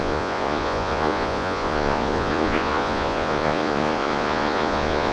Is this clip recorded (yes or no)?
no